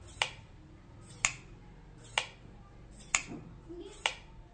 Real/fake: real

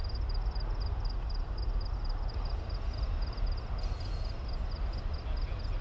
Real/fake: real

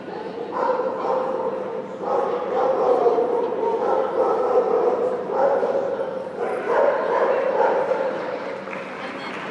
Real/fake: fake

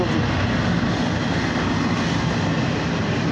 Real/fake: real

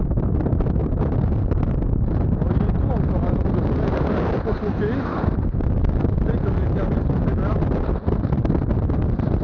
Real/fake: real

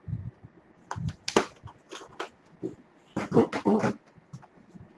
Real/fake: real